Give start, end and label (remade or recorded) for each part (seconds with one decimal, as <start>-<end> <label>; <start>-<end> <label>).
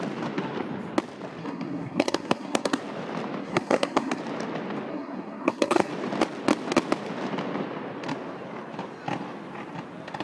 0.0-1.4 recorded; 1.4-2.8 remade; 2.8-3.4 recorded; 3.4-4.2 remade; 4.2-4.9 recorded; 4.9-5.9 remade; 5.9-10.2 recorded